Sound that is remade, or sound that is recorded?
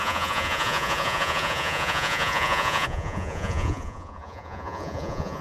remade